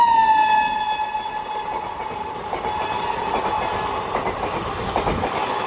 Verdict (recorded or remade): recorded